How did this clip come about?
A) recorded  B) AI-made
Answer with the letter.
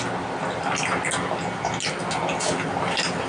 A